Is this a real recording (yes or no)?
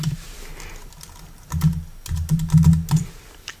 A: yes